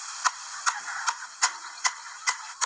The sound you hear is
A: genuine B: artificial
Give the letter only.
A